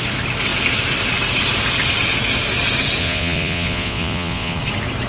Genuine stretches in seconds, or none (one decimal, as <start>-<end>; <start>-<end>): 0.0-3.0; 4.6-5.1